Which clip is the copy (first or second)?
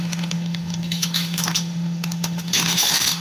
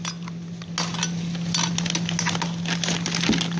first